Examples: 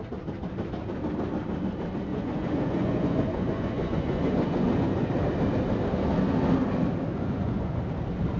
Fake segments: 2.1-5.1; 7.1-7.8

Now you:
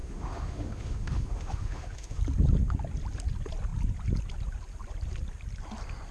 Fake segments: 0.0-2.2

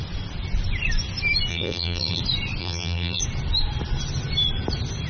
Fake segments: 1.5-2.2; 2.6-3.2

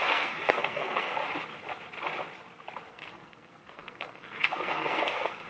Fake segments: 0.0-1.2; 2.9-5.5

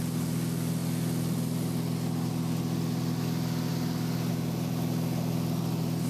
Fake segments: none

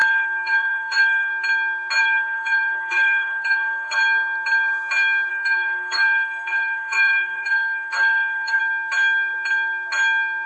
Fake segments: 0.0-1.3; 2.0-4.0; 5.3-8.6